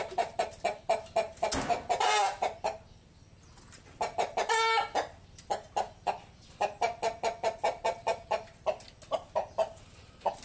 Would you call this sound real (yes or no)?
yes